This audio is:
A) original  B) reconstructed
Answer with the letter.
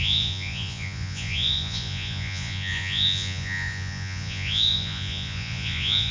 B